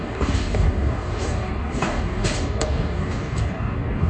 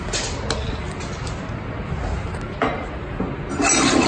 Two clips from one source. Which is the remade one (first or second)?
first